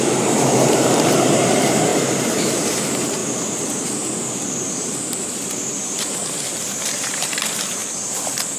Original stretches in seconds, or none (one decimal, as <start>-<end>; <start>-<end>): 3.2-6.6; 7.8-8.6